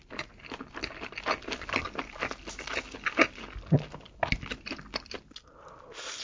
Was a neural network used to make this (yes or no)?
no